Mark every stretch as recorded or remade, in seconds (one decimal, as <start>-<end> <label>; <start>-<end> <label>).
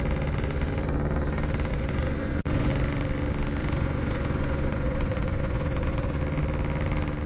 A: 0.0-1.7 recorded; 1.7-2.7 remade; 2.7-3.6 recorded; 3.6-6.2 remade; 6.2-7.3 recorded